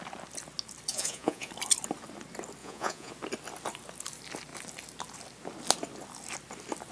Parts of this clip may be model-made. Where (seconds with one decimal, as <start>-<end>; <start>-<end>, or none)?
0.9-1.5; 2.6-3.1